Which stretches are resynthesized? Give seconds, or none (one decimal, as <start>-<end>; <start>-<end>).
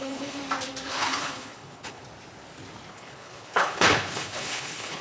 0.0-0.4; 0.9-2.0; 2.9-5.0